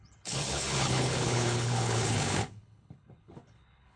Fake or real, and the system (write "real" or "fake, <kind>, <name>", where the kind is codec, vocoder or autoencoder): fake, codec, HILCodec